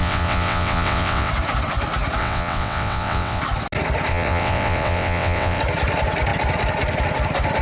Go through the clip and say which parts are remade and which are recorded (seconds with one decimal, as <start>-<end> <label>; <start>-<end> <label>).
0.0-1.3 remade; 1.3-2.2 recorded; 2.2-3.4 remade; 3.4-4.1 recorded; 4.1-5.6 remade; 5.6-7.6 recorded